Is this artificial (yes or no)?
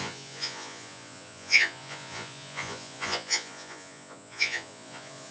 yes